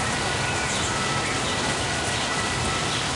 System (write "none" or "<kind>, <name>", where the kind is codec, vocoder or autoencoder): none